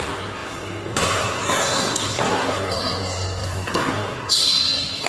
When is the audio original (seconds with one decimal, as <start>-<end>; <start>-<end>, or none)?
none